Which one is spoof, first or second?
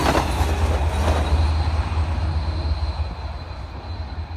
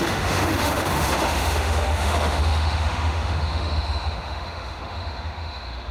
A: second